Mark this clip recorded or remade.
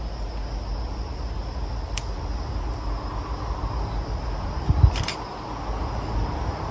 recorded